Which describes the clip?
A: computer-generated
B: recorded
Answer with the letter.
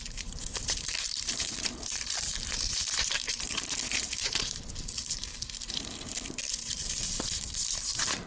A